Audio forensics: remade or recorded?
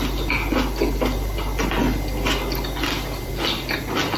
recorded